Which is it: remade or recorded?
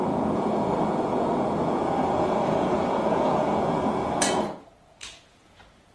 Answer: remade